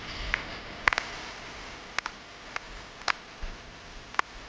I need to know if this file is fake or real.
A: real